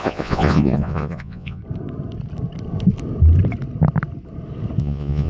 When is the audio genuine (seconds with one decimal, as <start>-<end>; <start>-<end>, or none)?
1.6-4.8